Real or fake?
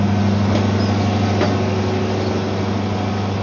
real